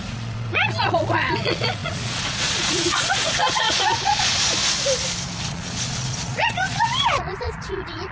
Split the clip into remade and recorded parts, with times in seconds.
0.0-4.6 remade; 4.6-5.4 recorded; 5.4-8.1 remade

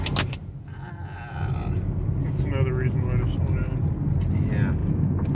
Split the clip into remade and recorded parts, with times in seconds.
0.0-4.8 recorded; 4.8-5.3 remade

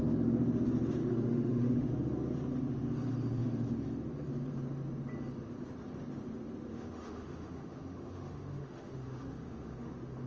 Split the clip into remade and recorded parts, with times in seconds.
0.0-1.0 recorded; 1.0-1.9 remade; 1.9-6.7 recorded; 6.7-9.9 remade; 9.9-10.3 recorded

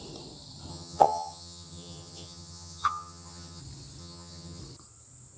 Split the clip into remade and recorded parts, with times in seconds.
0.0-0.7 recorded; 0.7-3.6 remade; 3.6-4.0 recorded; 4.0-4.6 remade; 4.6-5.4 recorded